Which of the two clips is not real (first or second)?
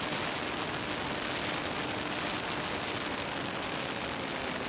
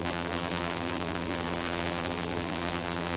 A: second